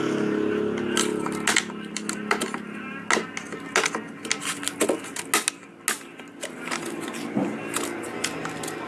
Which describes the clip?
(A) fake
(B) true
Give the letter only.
B